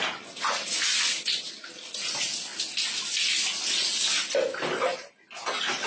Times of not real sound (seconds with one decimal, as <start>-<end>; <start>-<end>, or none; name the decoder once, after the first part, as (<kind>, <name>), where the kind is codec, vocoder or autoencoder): none

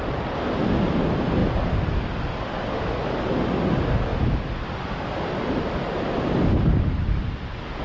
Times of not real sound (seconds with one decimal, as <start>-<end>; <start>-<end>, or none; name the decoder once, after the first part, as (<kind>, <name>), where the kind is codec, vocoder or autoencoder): none

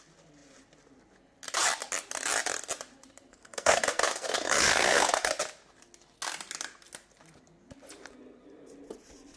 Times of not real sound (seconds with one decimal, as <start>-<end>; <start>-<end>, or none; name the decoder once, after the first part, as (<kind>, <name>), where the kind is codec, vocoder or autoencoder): 3.3-5.3 (codec, SNAC)